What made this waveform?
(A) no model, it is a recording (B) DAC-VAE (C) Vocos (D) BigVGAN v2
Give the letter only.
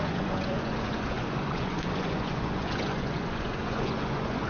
C